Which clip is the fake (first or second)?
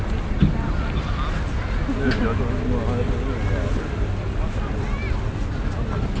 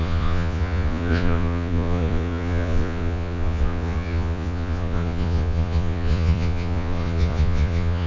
second